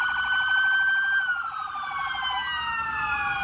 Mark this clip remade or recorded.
recorded